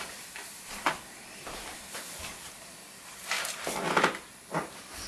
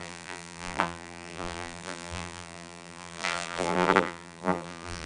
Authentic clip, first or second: first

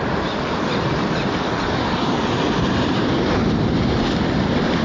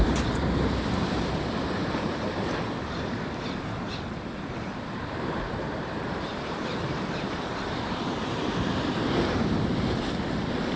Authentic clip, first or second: first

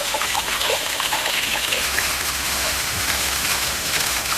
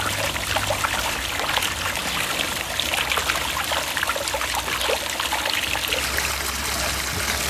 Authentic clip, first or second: second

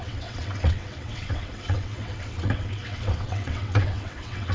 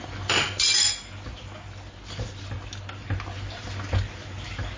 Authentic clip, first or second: second